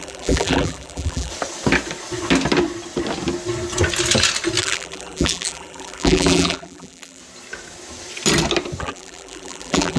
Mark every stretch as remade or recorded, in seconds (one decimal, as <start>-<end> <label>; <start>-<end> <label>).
0.0-1.3 remade; 1.3-4.6 recorded; 4.6-7.2 remade; 7.2-8.8 recorded; 8.8-10.0 remade